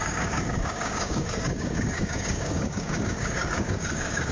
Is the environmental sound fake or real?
fake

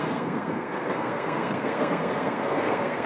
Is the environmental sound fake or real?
fake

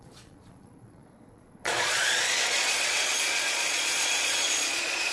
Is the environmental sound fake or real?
fake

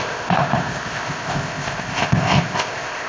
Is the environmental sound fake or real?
fake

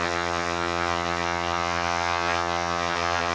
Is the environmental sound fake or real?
fake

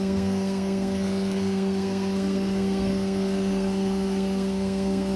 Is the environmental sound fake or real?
fake